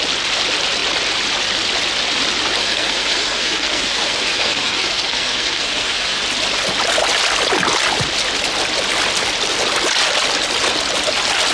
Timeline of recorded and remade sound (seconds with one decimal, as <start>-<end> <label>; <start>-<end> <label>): 0.0-2.6 recorded; 2.6-6.2 remade; 6.2-11.5 recorded